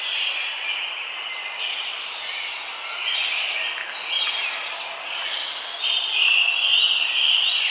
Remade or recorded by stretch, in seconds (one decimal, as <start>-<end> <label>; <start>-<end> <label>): 0.0-7.7 recorded